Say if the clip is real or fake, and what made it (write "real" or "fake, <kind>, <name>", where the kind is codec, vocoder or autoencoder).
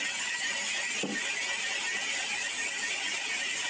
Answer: real